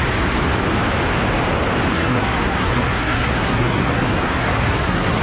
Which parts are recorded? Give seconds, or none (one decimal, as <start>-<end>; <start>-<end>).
0.0-1.9